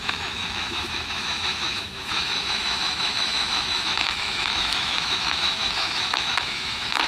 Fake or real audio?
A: fake